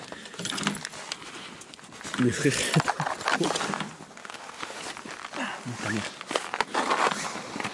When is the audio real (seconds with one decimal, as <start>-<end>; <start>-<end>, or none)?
0.0-4.2; 4.8-7.7